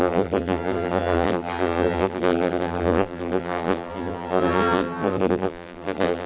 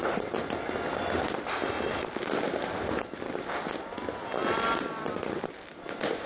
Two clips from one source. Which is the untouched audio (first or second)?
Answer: second